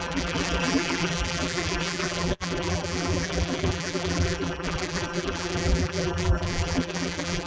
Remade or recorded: remade